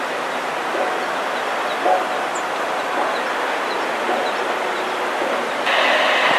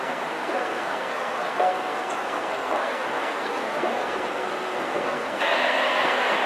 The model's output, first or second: second